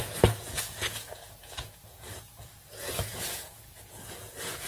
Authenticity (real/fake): fake